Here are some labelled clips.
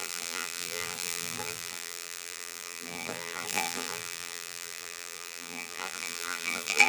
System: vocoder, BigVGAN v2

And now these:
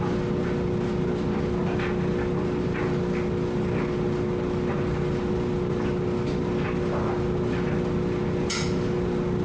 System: none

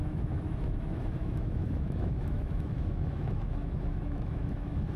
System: autoencoder, DAC-VAE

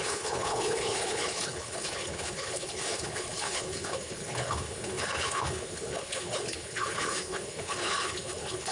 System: codec, HILCodec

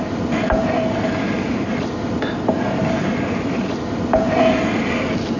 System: none